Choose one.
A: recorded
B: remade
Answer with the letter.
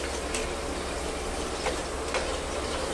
A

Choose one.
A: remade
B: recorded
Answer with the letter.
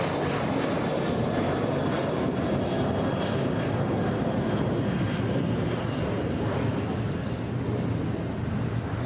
B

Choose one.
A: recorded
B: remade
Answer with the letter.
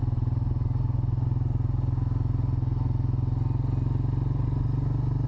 A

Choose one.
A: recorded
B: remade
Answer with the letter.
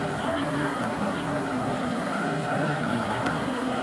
B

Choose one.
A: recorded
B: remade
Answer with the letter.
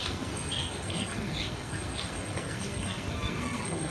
B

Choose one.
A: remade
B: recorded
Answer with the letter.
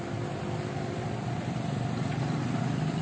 B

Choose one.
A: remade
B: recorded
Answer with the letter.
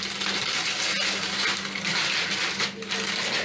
B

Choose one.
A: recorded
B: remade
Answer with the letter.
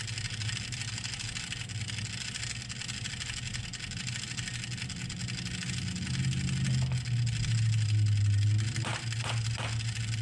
A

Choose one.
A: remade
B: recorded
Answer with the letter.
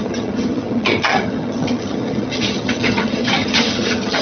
A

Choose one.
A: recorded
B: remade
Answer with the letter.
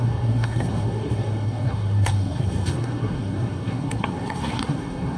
B